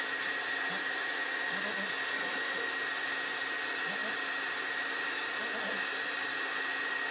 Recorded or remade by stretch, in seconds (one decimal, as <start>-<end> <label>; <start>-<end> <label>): 0.0-7.1 recorded